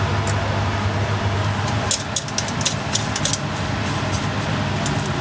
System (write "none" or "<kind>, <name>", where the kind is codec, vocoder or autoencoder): none